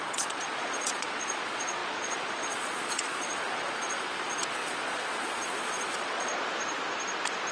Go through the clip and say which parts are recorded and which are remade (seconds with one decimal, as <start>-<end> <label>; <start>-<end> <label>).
0.0-6.3 remade; 6.3-7.5 recorded